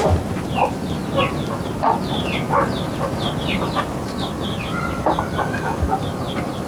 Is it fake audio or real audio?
real